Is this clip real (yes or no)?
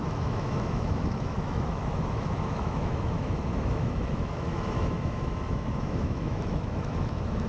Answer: no